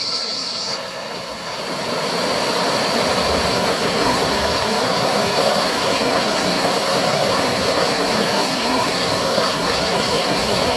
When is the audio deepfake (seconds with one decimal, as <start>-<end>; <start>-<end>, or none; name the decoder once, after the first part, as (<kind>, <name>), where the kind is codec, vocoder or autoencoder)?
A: 0.0-1.6 (codec, SNAC); 3.5-10.8

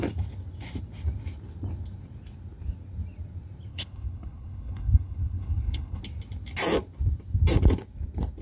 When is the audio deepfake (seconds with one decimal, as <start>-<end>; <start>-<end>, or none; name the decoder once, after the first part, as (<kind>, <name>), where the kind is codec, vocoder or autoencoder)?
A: 3.7-6.0 (codec, HILCodec)